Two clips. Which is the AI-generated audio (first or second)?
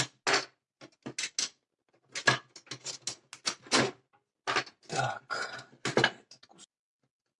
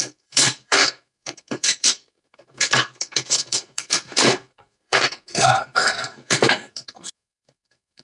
second